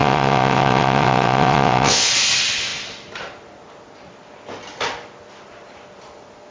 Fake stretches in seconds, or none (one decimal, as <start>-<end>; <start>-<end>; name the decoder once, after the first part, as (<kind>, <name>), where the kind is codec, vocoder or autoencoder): 0.0-2.1 (vocoder, WaveNeXt)